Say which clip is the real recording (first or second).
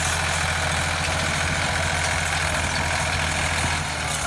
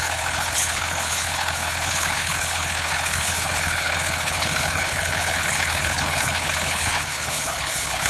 first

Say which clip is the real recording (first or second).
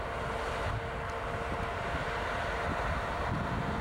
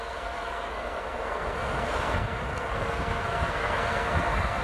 first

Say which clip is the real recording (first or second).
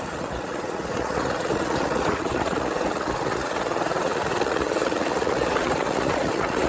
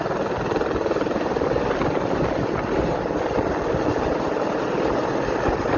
second